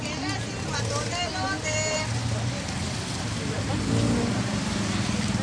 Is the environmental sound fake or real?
real